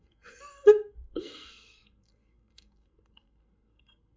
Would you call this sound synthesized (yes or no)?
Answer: yes